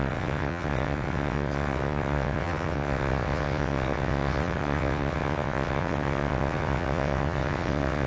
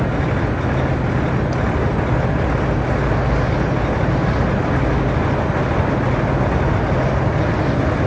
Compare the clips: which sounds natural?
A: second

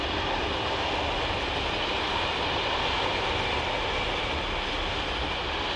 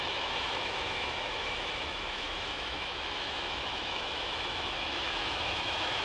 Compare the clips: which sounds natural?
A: first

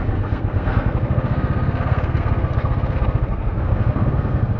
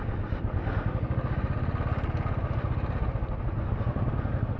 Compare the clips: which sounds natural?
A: second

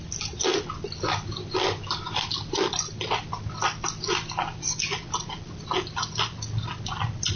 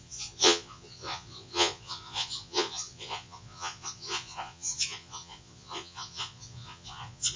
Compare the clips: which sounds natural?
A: first